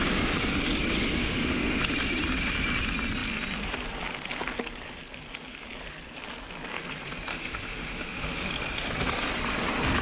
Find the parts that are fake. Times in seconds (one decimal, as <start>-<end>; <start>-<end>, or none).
1.2-1.8; 7.3-8.5